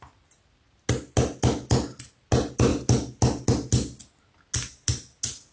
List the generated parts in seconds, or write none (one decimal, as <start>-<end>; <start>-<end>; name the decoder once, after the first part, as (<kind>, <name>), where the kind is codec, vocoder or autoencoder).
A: none